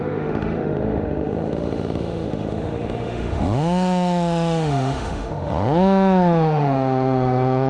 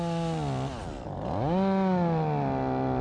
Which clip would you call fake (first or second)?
first